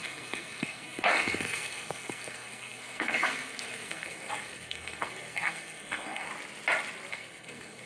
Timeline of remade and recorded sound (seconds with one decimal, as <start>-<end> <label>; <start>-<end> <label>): 0.0-6.3 remade; 6.3-7.1 recorded; 7.1-7.9 remade